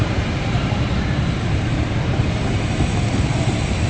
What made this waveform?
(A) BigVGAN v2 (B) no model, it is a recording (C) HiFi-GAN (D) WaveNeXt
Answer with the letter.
A